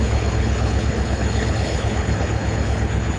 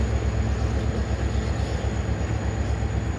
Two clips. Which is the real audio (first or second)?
second